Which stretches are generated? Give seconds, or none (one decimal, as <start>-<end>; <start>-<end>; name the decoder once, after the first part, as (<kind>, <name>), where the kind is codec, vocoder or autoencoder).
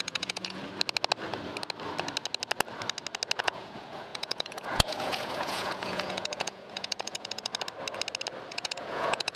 0.0-0.6 (vocoder, Vocos); 3.4-7.5; 8.5-9.4